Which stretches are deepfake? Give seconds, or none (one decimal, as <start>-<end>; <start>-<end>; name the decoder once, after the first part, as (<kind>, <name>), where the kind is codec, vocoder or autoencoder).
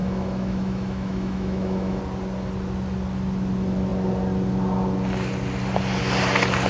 0.0-2.0 (autoencoder, DAC-VAE)